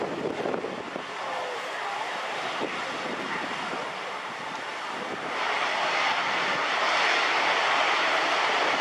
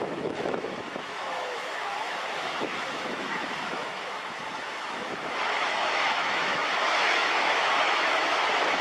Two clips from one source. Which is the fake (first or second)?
second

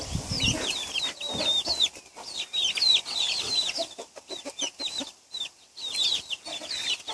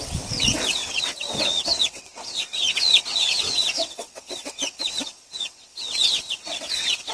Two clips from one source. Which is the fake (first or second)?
second